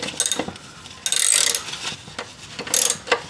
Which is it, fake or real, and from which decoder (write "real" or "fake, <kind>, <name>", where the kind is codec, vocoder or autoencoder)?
real